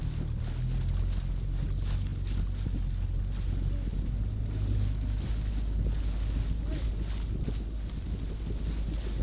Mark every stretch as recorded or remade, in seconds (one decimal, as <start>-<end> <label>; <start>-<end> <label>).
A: 0.0-9.2 recorded